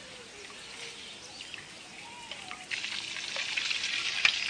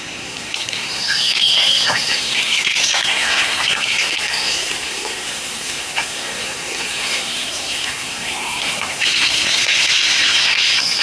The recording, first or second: first